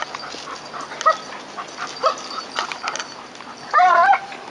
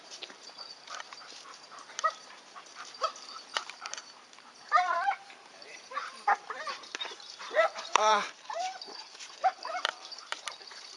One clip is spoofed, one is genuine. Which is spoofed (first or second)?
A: second